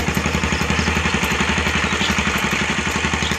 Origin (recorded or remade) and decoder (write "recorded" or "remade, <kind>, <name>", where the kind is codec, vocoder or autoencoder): recorded